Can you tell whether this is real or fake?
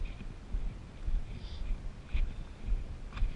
real